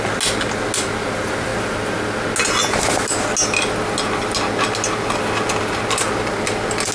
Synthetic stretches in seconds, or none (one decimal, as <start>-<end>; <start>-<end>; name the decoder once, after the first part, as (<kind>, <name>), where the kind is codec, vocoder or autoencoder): none